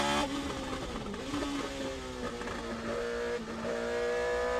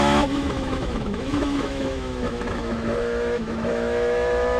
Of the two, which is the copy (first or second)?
second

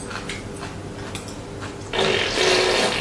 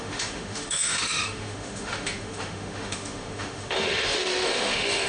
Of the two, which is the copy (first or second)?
second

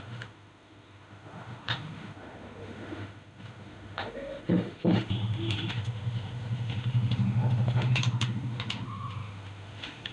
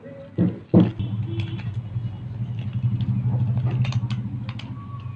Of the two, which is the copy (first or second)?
first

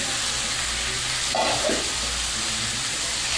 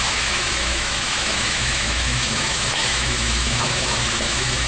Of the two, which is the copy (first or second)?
second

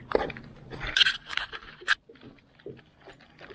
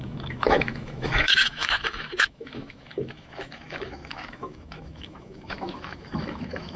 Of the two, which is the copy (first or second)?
second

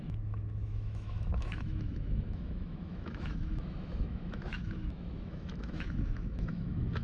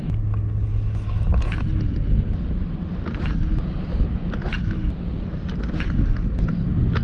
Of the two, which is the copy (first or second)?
first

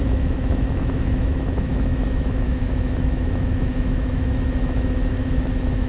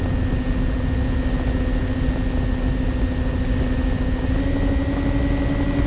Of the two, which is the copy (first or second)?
first